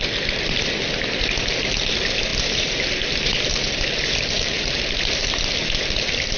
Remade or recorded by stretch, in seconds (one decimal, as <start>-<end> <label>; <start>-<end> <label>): 0.0-6.4 recorded